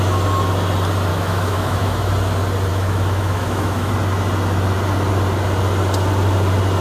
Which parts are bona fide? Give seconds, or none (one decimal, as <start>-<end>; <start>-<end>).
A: 0.0-1.1; 2.1-2.7; 3.9-6.8